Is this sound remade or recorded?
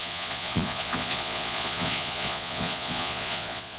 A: remade